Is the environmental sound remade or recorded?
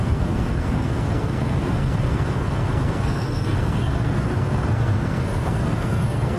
remade